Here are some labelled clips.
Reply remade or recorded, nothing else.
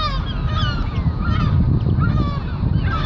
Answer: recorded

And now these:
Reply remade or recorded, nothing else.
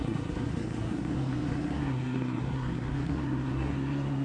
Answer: remade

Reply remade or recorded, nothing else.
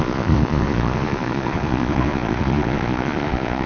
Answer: remade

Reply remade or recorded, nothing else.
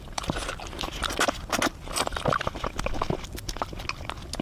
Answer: recorded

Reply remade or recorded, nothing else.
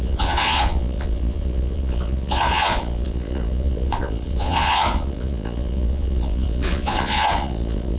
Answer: remade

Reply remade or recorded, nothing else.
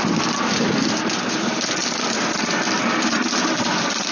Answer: recorded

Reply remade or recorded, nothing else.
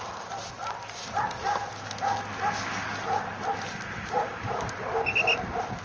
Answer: recorded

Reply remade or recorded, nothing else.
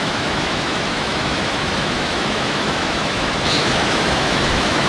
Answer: remade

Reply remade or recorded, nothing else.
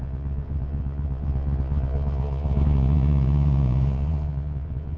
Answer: remade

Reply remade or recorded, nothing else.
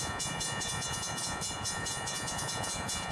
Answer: remade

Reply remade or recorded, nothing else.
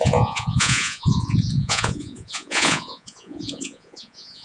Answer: remade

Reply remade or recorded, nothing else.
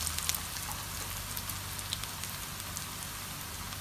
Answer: recorded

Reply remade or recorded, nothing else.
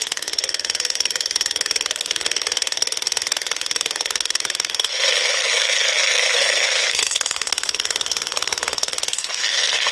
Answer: remade